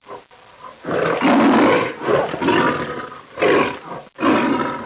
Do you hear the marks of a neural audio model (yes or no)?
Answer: no